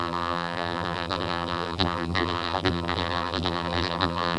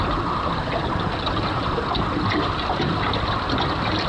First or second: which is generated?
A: first